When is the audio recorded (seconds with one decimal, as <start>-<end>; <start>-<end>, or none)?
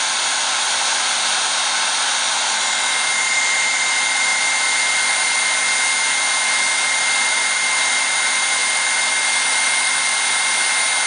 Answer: 0.0-11.1